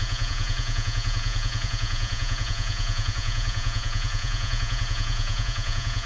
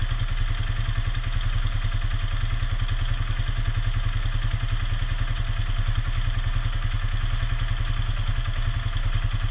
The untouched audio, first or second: second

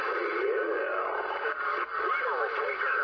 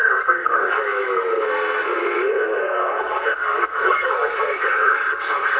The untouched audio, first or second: first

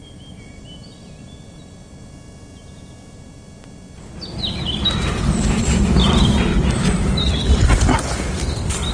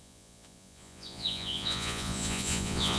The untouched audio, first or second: first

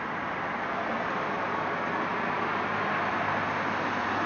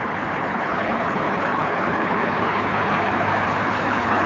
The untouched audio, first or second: first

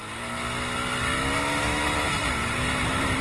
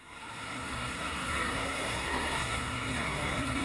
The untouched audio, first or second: first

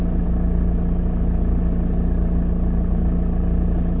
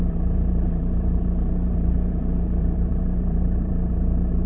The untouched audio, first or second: first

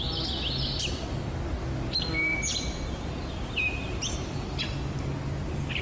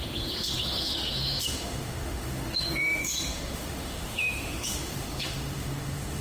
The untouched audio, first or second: first